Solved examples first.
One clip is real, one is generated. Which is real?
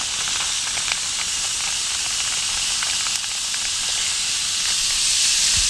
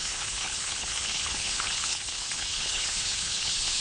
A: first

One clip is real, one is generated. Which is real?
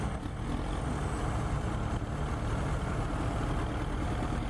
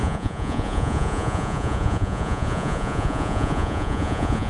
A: first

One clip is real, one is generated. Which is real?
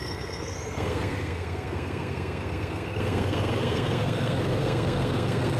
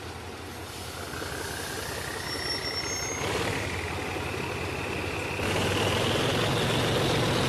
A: second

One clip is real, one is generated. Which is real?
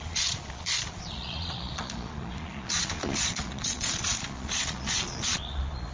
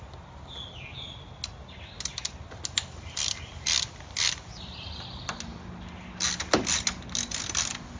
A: second